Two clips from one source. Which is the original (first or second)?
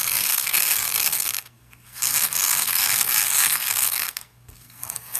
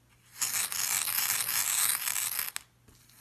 second